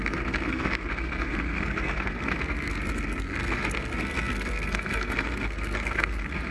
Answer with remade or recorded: remade